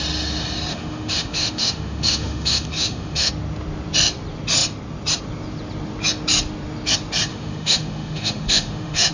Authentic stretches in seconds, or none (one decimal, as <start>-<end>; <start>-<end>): 0.0-0.7; 3.3-7.3